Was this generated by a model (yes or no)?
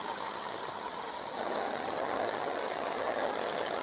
yes